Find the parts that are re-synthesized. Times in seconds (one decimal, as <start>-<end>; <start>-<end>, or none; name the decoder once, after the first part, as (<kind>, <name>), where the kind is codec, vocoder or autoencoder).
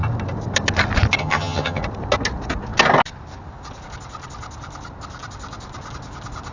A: 1.2-1.8 (vocoder, HiFi-GAN)